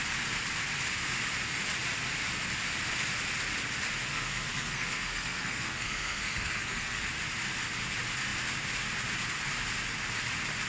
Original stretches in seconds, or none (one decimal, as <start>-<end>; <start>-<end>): 0.0-4.1; 7.0-10.7